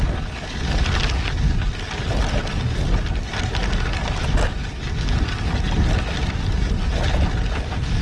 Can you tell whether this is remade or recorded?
recorded